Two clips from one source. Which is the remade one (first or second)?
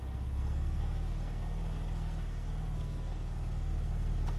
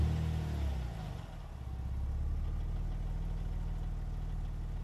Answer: first